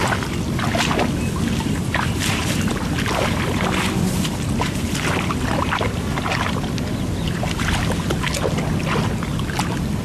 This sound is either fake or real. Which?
real